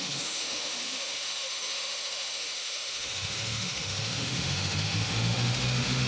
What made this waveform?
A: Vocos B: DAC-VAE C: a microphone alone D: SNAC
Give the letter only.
B